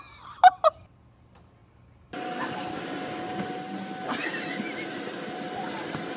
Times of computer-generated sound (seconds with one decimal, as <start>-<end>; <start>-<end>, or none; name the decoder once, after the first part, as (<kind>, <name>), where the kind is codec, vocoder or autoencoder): none